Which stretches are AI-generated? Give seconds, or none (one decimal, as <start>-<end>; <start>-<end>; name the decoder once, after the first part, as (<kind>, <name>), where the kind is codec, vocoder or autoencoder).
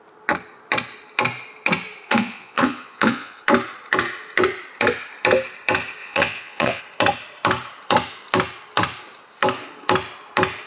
2.1-3.4 (vocoder, Vocos); 6.0-6.8